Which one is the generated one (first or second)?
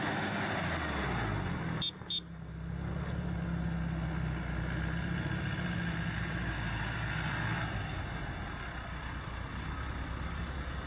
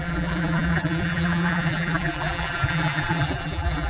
second